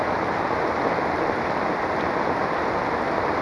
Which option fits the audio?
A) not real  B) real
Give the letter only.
B